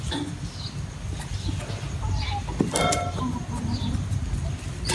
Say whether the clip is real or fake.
real